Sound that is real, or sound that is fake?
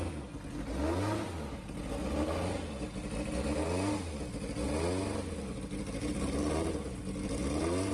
real